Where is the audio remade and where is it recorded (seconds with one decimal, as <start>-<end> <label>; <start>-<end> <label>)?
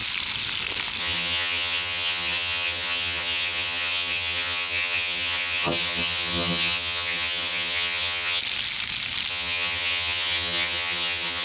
0.0-1.0 recorded; 1.0-8.4 remade; 8.4-9.3 recorded; 9.3-11.4 remade